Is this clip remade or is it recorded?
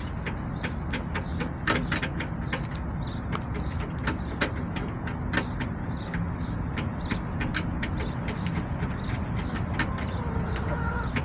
recorded